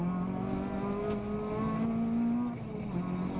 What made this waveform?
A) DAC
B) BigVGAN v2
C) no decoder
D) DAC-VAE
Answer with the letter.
C